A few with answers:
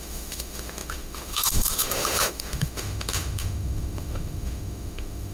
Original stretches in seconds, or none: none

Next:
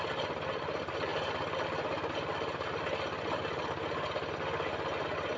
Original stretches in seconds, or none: 0.0-5.4

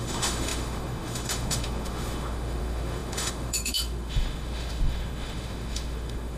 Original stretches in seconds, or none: none